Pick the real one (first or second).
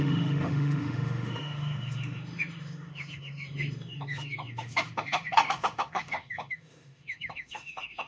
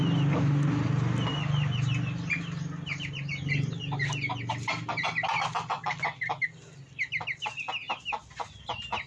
second